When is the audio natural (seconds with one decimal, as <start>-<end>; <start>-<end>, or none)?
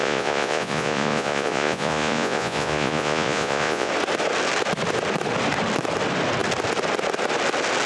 3.9-7.9